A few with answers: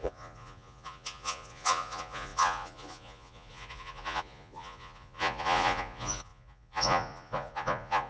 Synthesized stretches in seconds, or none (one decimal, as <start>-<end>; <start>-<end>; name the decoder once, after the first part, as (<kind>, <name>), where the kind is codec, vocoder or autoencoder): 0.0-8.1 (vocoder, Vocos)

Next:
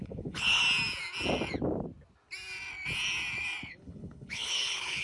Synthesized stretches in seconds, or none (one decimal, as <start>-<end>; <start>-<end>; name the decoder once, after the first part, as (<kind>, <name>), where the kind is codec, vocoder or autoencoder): 0.0-0.6 (codec, HILCodec); 3.6-5.0

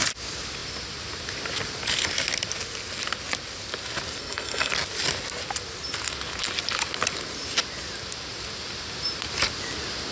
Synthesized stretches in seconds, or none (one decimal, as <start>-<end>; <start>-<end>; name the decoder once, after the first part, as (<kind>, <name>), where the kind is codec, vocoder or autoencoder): 4.2-4.7 (codec, SNAC)

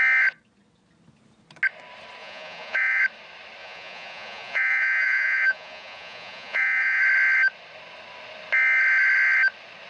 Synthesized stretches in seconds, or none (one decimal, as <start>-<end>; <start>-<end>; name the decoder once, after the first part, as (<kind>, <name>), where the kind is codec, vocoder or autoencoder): 2.2-3.0 (vocoder, Vocos); 3.6-7.0

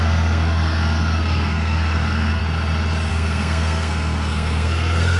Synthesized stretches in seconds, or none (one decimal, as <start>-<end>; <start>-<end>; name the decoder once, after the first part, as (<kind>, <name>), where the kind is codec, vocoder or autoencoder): 0.0-2.4 (codec, SNAC); 3.1-5.2